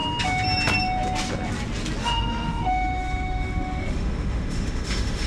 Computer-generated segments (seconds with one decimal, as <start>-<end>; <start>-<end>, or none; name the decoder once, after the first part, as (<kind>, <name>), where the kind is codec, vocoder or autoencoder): 2.0-5.3 (autoencoder, DAC-VAE)